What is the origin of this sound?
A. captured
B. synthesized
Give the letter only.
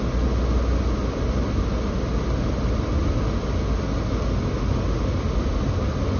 A